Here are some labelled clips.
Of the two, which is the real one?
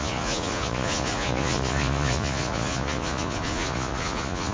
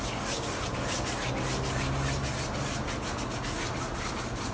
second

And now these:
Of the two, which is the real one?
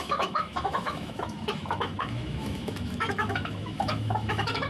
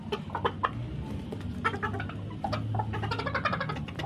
second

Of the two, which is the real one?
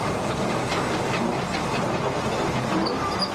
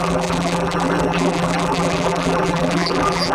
first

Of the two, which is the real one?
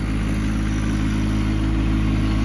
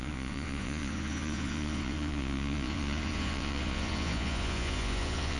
first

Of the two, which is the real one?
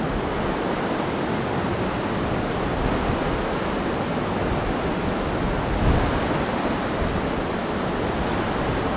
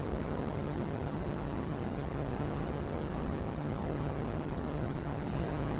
first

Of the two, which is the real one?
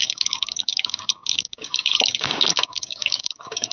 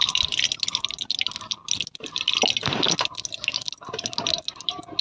second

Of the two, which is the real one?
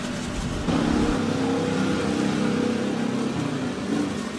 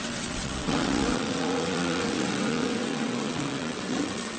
first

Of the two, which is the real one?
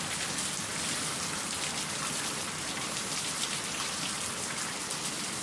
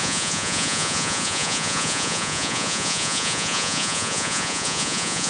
first